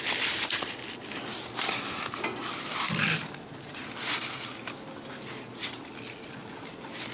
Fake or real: real